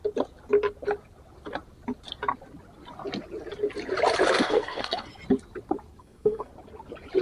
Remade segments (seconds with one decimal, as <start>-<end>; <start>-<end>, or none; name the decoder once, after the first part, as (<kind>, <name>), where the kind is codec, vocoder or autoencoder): 4.3-5.1 (codec, SNAC); 6.0-6.5